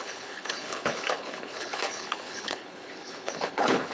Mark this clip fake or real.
fake